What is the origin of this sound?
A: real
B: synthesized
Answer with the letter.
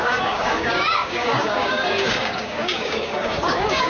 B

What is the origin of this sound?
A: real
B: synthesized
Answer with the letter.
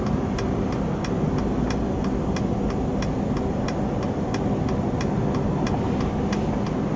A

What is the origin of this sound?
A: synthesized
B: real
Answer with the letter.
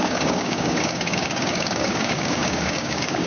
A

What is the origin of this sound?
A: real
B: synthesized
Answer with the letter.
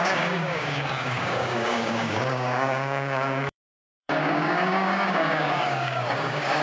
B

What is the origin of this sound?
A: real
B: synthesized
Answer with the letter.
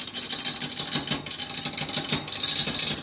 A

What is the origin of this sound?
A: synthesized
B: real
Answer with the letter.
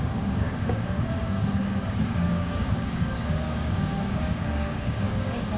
A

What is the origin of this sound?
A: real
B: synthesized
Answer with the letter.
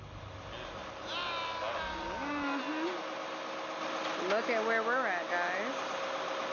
A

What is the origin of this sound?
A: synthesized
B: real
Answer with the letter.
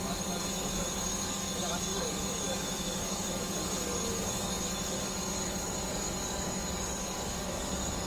A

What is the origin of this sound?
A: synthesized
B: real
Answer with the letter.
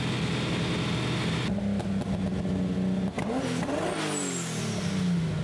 B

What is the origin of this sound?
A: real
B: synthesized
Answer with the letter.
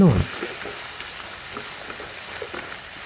A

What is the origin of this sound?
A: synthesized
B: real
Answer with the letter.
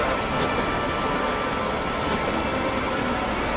B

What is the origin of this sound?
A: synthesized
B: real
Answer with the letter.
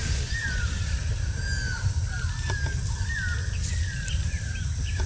B